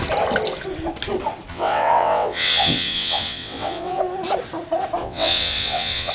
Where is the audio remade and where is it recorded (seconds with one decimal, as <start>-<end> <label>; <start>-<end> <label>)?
0.0-1.5 recorded; 1.5-4.0 remade; 4.0-5.0 recorded; 5.0-6.1 remade